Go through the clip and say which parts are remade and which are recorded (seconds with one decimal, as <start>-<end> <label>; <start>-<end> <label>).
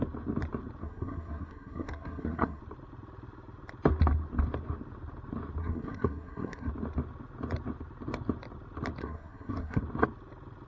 0.0-0.8 recorded; 0.8-2.6 remade; 2.6-5.6 recorded; 5.6-6.7 remade; 6.7-9.0 recorded; 9.0-9.8 remade; 9.8-10.7 recorded